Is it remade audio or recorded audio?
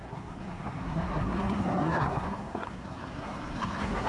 remade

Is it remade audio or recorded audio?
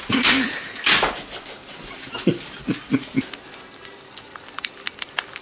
recorded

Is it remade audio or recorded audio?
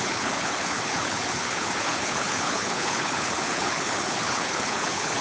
remade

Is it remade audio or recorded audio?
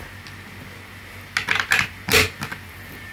recorded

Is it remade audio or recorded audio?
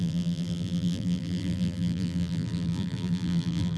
remade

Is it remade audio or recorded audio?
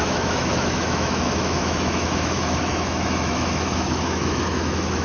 remade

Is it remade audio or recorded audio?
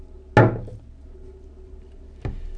recorded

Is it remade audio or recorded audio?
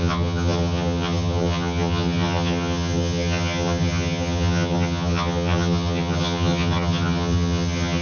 remade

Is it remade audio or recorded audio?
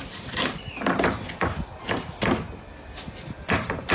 recorded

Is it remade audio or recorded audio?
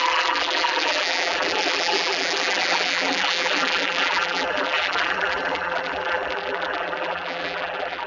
remade